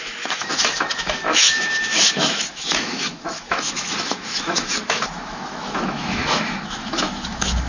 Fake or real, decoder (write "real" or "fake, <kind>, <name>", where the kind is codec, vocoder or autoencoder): fake, autoencoder, DAC-VAE